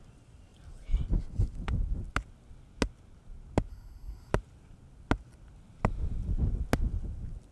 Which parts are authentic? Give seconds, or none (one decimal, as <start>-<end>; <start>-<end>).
0.0-3.7; 4.3-7.5